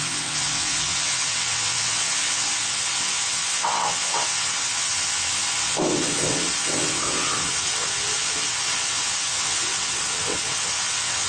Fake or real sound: fake